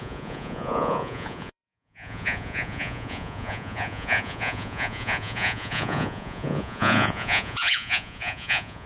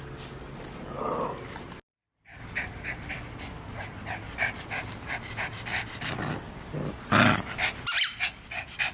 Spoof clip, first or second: first